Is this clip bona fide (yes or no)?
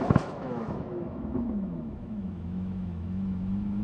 no